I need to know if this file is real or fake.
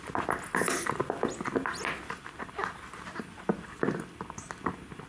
real